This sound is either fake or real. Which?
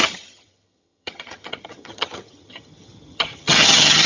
fake